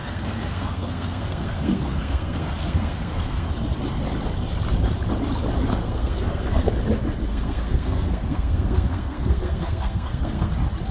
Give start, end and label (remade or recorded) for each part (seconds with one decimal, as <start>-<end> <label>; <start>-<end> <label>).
0.0-3.5 remade; 3.5-5.7 recorded; 5.7-6.7 remade; 6.7-7.3 recorded; 7.3-10.5 remade; 10.5-10.9 recorded